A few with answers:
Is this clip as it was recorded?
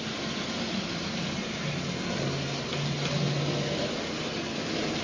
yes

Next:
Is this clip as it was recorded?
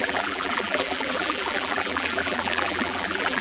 no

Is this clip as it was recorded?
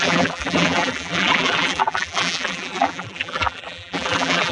no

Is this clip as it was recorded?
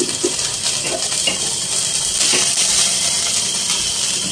yes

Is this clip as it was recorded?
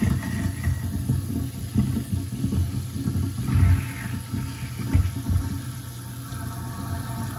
yes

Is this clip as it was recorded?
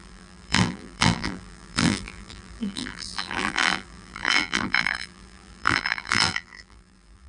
no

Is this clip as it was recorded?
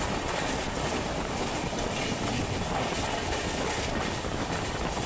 yes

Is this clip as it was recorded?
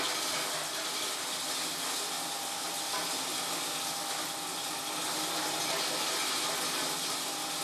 yes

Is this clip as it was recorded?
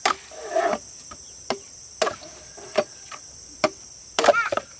no